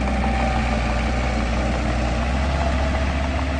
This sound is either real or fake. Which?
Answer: real